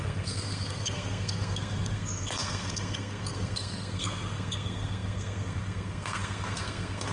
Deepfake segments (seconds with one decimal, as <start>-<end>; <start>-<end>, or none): 0.0-7.1